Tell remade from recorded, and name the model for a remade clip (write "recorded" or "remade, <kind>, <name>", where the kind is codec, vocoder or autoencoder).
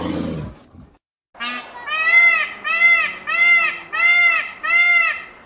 recorded